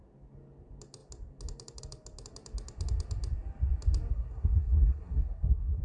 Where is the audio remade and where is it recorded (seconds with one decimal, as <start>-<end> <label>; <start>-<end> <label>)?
0.0-4.1 recorded; 4.1-5.8 remade